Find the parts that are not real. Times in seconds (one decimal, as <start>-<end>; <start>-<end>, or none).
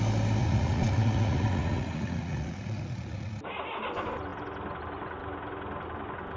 0.4-3.3